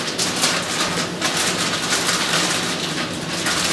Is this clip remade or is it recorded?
recorded